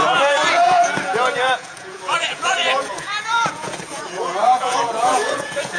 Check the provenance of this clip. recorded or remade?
remade